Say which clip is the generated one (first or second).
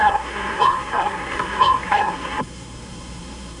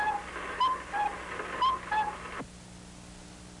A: first